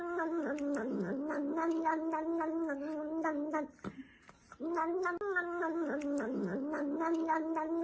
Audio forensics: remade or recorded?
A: recorded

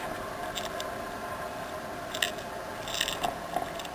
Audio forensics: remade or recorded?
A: recorded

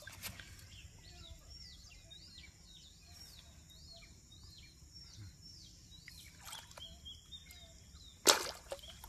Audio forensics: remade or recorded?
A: recorded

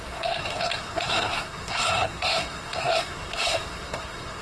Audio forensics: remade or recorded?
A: remade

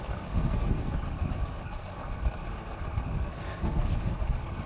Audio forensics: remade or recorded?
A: remade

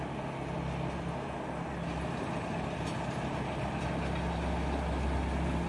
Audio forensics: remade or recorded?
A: recorded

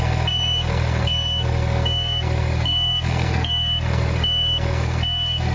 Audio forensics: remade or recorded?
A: remade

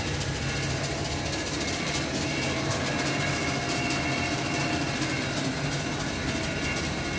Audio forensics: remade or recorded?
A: recorded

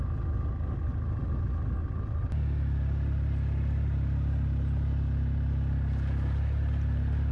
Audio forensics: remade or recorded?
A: recorded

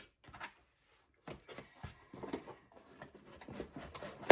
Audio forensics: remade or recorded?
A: recorded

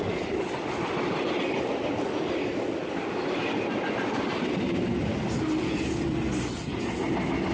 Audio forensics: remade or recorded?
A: recorded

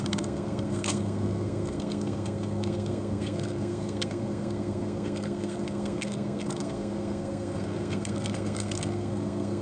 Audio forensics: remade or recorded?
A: remade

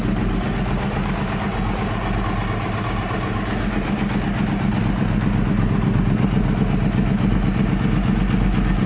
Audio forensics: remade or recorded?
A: recorded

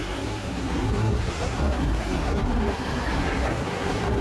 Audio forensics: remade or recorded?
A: remade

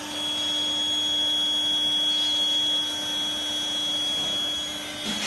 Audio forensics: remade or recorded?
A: recorded